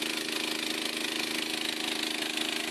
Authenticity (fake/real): real